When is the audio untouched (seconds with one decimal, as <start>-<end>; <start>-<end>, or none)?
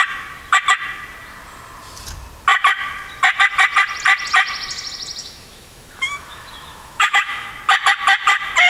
0.0-5.2; 7.5-8.7